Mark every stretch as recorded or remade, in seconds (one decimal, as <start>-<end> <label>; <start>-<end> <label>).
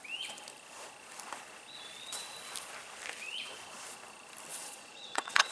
0.0-4.5 recorded; 4.5-5.5 remade